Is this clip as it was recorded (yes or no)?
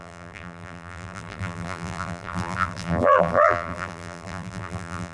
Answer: no